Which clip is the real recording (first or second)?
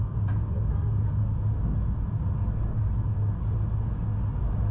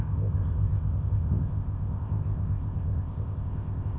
first